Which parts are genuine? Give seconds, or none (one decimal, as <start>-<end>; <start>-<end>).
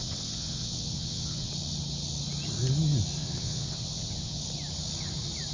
1.5-3.2; 4.4-5.5